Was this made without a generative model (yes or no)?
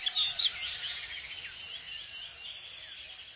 yes